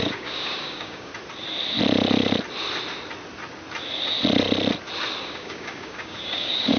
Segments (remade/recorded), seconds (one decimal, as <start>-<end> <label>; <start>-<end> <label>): 0.0-1.1 remade; 1.1-5.2 recorded; 5.2-6.8 remade

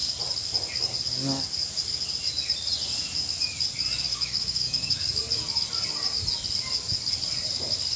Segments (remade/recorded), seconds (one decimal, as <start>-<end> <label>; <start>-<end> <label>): 0.0-4.1 recorded; 4.1-5.0 remade; 5.0-8.0 recorded

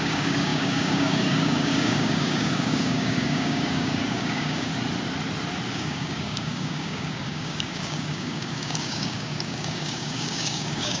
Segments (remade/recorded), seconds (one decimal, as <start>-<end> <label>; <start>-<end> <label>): 0.0-4.7 remade; 4.7-5.7 recorded; 5.7-11.0 remade

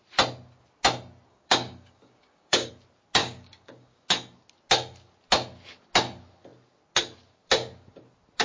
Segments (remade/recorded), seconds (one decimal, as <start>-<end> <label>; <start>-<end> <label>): 0.0-1.3 recorded; 1.3-2.7 remade; 2.7-3.2 recorded; 3.2-4.1 remade; 4.1-8.4 recorded